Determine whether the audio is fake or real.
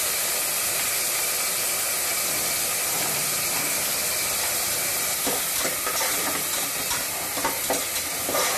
real